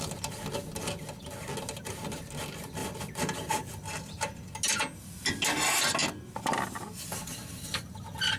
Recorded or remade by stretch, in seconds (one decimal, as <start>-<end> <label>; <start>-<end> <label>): 0.0-8.4 recorded